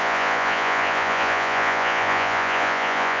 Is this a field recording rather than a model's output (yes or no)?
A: no